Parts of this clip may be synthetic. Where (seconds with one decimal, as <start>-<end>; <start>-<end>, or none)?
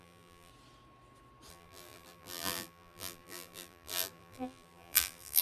0.0-0.5; 1.5-5.4